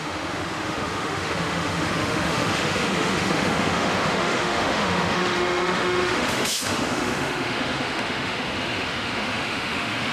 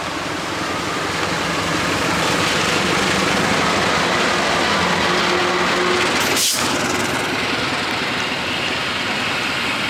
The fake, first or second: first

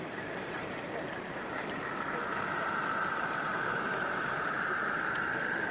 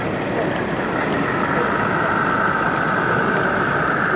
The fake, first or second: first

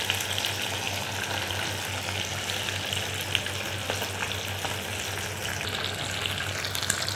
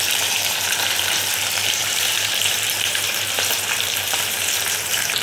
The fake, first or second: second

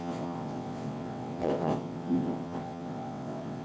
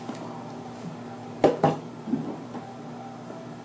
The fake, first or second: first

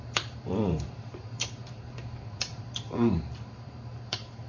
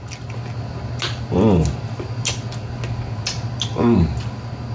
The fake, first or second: first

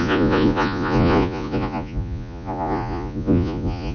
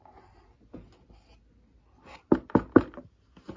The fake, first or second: first